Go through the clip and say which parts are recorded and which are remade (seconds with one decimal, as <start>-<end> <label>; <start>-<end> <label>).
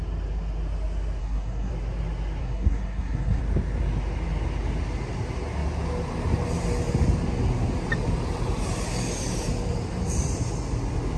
0.0-1.2 recorded; 1.2-1.7 remade; 1.7-2.4 recorded; 2.4-3.4 remade; 3.4-11.2 recorded